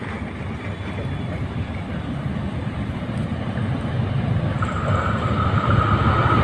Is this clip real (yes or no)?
yes